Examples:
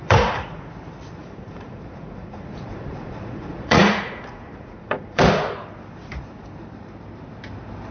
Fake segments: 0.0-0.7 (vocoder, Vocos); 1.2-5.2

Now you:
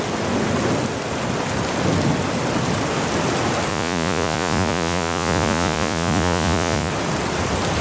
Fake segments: 3.7-6.9 (vocoder, Vocos)